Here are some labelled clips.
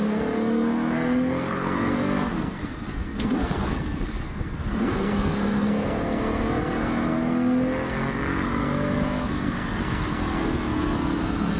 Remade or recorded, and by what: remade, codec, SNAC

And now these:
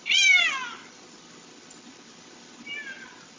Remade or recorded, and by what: recorded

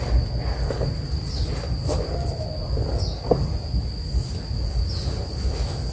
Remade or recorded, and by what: recorded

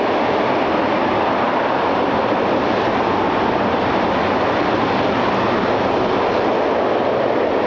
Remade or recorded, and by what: recorded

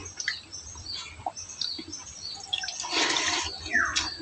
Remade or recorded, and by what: recorded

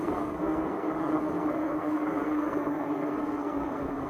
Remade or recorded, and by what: remade, codec, SNAC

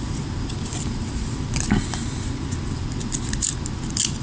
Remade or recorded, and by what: recorded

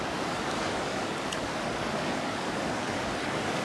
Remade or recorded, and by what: remade, codec, DAC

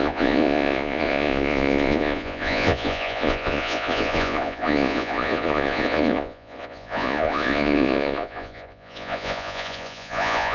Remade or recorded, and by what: remade, vocoder, Vocos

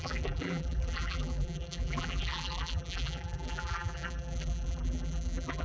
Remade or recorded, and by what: remade, vocoder, BigVGAN v2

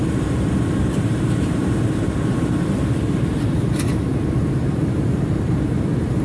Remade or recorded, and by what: remade, vocoder, BigVGAN v2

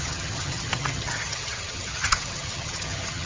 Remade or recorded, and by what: remade, vocoder, HiFi-GAN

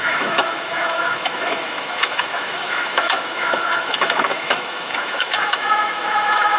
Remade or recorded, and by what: remade, autoencoder, DAC-VAE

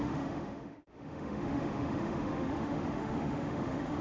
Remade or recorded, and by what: remade, autoencoder, DAC-VAE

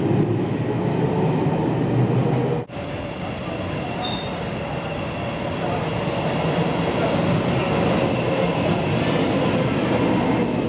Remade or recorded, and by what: recorded